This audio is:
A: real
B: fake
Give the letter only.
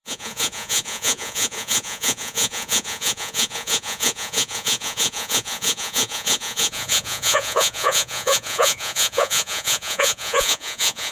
B